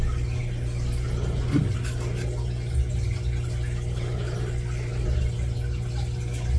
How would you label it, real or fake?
real